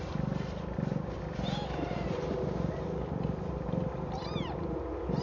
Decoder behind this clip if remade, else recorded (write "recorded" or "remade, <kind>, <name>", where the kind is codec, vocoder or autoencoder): recorded